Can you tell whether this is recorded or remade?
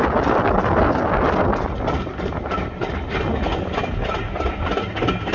recorded